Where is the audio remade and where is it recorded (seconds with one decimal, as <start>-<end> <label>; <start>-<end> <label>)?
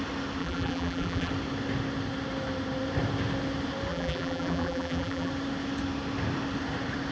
0.0-0.4 recorded; 0.4-1.3 remade; 1.3-3.9 recorded; 3.9-5.3 remade; 5.3-7.1 recorded